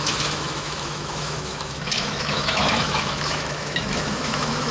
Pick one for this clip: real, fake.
fake